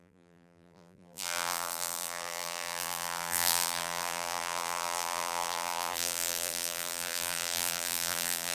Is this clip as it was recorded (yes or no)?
no